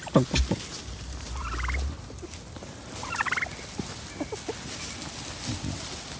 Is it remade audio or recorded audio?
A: recorded